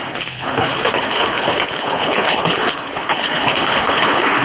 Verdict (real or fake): fake